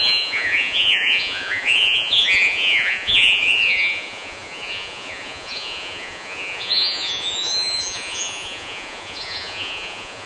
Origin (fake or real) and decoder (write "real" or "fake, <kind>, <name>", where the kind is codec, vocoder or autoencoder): fake, vocoder, Vocos